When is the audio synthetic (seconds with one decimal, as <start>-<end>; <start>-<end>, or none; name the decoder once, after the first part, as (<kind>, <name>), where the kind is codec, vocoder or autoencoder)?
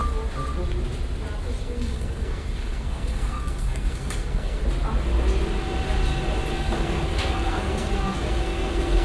1.6-4.6 (codec, SNAC); 6.5-9.0